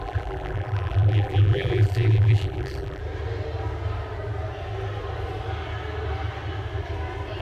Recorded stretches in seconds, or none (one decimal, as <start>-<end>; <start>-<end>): 3.0-7.4